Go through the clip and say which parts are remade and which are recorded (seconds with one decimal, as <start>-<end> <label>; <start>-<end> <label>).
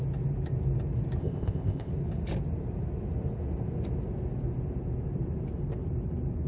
0.0-1.2 recorded; 1.2-1.9 remade; 1.9-6.5 recorded